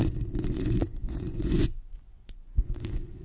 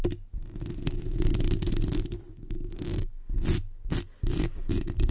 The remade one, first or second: first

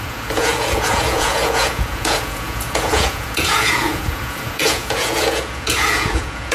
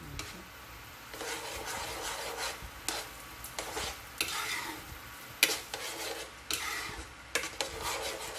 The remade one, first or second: first